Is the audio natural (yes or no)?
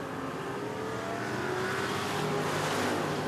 yes